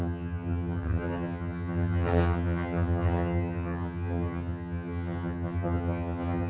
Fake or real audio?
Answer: fake